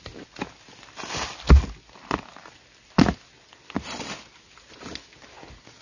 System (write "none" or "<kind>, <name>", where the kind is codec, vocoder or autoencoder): none